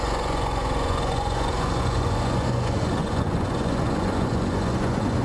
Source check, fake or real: fake